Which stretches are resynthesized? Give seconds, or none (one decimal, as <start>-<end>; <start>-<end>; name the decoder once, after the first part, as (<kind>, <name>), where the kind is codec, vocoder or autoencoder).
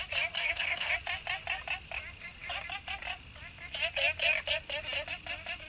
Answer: 0.4-0.9 (codec, SNAC)